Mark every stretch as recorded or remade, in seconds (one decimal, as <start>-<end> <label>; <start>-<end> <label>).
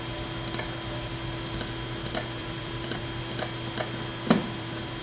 0.0-2.4 recorded; 2.4-3.0 remade; 3.0-4.4 recorded; 4.4-5.0 remade